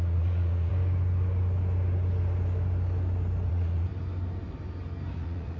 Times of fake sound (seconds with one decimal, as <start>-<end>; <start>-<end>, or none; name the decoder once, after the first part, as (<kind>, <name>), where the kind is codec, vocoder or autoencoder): 0.0-0.7 (vocoder, Vocos); 3.5-3.9; 5.1-5.6